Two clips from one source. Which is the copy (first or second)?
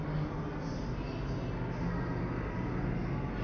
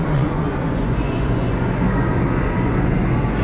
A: second